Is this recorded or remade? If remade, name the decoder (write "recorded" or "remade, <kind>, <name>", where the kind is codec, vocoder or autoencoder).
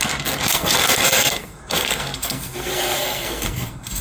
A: remade, codec, SNAC